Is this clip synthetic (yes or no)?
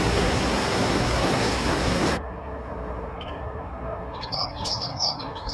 yes